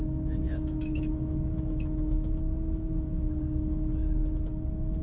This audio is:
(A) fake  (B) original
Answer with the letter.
A